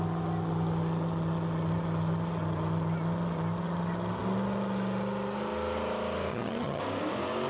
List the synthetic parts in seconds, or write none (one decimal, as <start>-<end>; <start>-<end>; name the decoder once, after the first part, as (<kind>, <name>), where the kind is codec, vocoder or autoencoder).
6.3-6.8 (vocoder, HiFi-GAN)

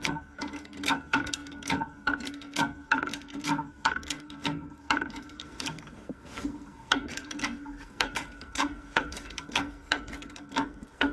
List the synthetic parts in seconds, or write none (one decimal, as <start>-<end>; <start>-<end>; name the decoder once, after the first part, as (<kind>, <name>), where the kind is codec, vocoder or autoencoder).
0.0-11.1 (codec, SNAC)

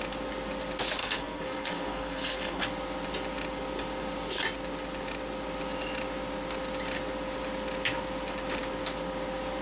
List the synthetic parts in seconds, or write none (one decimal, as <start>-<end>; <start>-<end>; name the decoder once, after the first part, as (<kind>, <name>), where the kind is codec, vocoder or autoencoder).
1.0-2.6 (codec, SNAC)

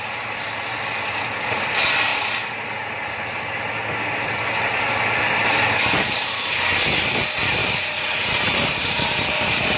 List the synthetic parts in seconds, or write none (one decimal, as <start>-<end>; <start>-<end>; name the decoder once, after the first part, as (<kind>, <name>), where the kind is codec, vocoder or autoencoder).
7.6-9.8 (vocoder, BigVGAN v2)

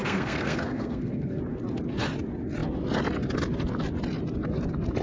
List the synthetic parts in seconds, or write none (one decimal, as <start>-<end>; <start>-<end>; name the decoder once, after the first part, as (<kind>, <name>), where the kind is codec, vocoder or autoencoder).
0.0-1.4 (codec, SNAC)